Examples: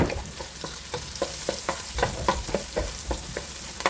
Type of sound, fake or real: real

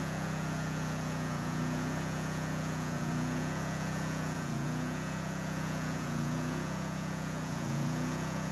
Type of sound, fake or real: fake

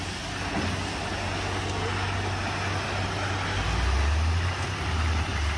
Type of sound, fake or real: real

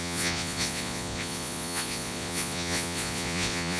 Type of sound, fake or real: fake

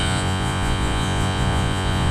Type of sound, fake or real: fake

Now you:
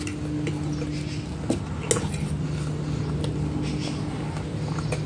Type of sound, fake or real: real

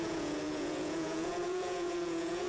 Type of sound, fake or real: fake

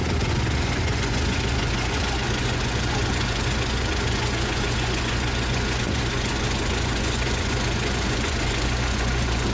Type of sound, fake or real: fake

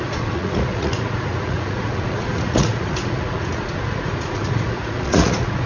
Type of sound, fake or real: fake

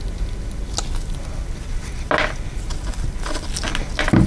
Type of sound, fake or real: real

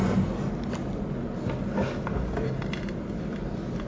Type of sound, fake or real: real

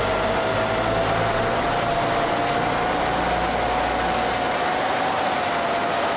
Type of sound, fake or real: real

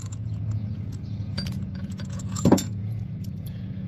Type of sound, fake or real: fake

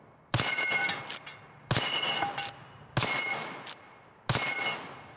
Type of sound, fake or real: real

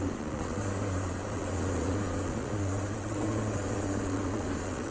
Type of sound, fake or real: fake